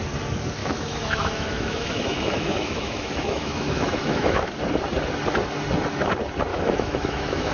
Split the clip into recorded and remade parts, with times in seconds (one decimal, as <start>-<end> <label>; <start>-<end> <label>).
0.0-0.6 recorded; 0.6-4.5 remade; 4.5-6.5 recorded; 6.5-7.5 remade